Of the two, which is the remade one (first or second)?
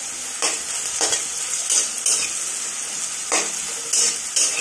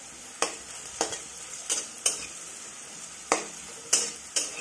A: second